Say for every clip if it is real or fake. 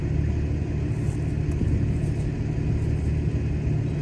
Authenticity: real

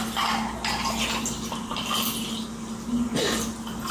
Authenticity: real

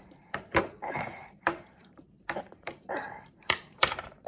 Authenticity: fake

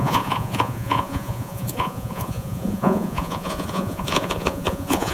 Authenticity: fake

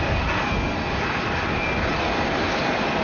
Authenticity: real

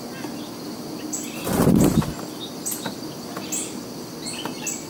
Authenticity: real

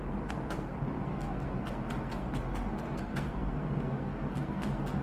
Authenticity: fake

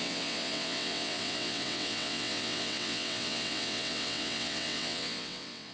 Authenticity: fake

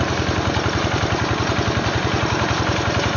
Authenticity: real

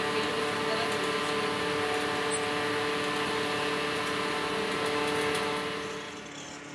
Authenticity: real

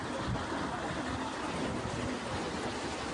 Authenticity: real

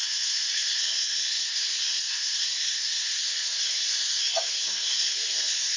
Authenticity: fake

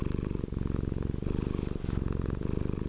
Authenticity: real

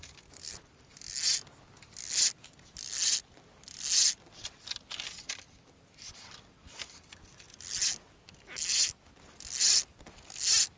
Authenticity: real